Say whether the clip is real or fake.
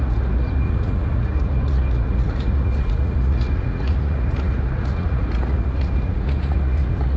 fake